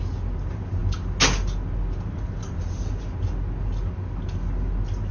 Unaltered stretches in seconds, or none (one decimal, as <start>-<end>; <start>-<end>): 0.0-5.1

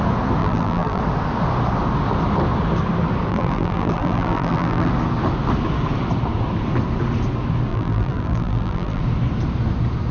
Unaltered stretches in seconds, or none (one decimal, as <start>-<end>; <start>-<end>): 0.0-0.4; 1.0-3.3; 4.9-7.7; 9.0-10.1

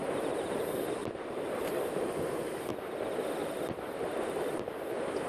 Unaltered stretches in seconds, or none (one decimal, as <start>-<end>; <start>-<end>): 0.6-1.0; 2.7-3.4; 4.6-5.3

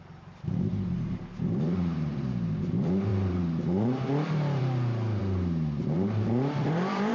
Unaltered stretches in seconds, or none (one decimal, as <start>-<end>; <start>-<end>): 5.2-5.8

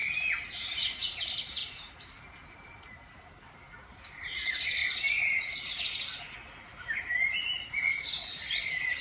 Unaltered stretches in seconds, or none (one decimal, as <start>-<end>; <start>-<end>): 0.0-0.7; 4.8-9.0